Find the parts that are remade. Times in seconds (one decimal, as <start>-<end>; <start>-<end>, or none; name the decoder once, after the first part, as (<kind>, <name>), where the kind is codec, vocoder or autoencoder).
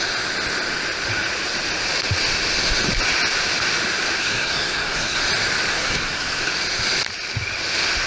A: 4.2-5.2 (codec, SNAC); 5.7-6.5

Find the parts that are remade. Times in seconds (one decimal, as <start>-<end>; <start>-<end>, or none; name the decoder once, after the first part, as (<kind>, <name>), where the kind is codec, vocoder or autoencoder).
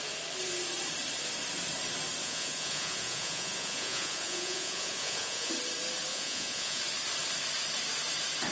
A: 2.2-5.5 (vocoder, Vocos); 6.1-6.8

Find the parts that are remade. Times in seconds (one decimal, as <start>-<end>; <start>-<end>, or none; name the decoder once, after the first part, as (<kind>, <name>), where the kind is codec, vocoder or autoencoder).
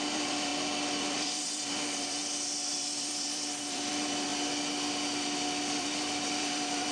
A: 0.0-0.5 (vocoder, BigVGAN v2); 1.0-2.2; 2.7-4.3; 5.8-6.9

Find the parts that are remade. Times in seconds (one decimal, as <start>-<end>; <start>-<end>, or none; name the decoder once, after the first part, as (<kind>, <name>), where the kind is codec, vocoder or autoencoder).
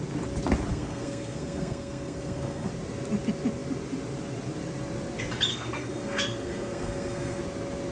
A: 0.7-2.7 (codec, SNAC); 5.5-7.4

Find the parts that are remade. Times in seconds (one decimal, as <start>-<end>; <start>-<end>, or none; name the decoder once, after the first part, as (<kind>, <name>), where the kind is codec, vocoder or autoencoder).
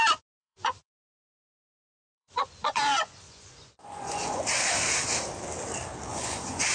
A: 0.4-4.4 (vocoder, Vocos); 6.1-6.7